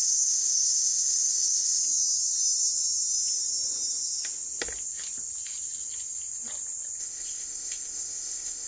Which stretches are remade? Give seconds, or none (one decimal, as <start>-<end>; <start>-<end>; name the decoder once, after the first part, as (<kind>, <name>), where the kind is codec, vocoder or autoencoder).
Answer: 0.0-1.8 (codec, ZipCodec); 7.0-8.7